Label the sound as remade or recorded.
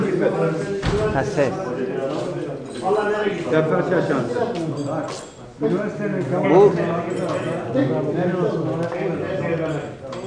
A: recorded